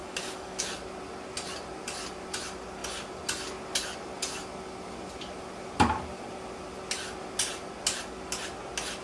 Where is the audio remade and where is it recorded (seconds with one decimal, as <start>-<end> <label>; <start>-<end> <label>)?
0.0-0.6 remade; 0.6-9.0 recorded

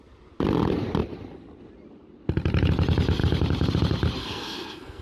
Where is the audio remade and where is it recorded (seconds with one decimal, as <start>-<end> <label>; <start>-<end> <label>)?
0.0-4.2 recorded; 4.2-5.0 remade

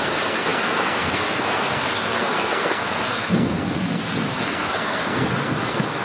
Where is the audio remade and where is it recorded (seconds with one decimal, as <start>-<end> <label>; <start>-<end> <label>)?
0.0-6.0 remade

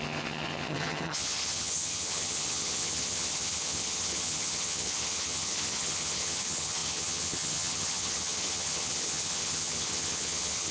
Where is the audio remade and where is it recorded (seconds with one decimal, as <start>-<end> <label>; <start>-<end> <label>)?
0.0-10.7 remade

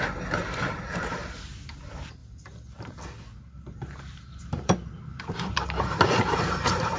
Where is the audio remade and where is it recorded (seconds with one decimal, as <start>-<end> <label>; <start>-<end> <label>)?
0.0-2.2 remade; 2.2-3.8 recorded; 3.8-7.0 remade

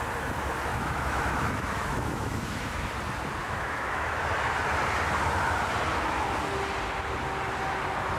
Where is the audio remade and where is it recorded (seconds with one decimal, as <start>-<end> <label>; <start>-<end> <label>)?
0.0-0.7 recorded; 0.7-2.9 remade; 2.9-3.4 recorded; 3.4-4.2 remade; 4.2-8.2 recorded

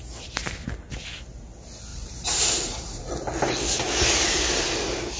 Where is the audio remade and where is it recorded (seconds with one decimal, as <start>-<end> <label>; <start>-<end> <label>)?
0.0-1.9 recorded; 1.9-3.0 remade; 3.0-5.2 recorded